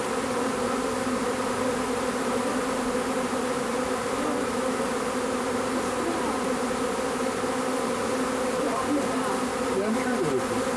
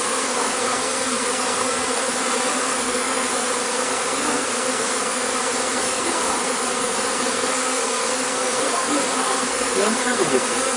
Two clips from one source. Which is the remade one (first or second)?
second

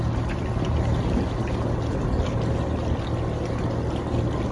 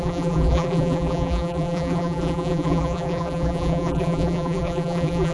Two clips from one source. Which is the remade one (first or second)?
second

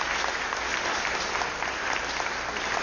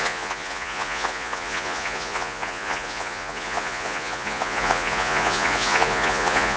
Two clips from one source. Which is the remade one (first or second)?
second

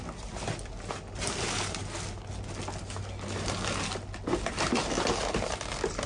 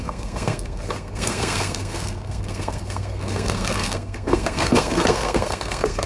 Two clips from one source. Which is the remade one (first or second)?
second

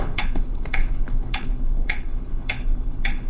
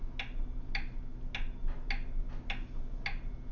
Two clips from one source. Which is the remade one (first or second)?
first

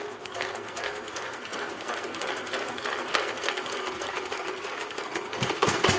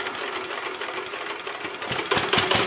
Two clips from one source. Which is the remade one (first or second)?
first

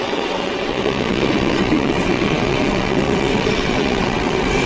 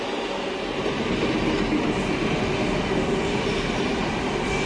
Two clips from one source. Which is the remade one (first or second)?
first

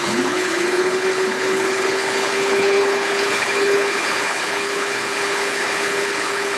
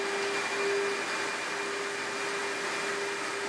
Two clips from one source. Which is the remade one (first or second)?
first